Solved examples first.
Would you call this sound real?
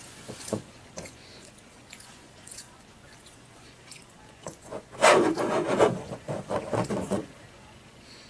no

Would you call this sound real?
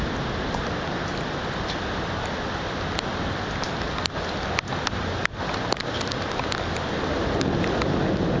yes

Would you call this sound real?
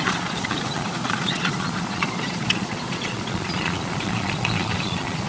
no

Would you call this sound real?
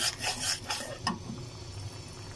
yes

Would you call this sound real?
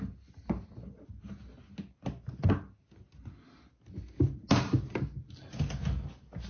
yes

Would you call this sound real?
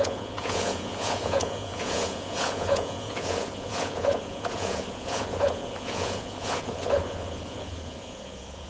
no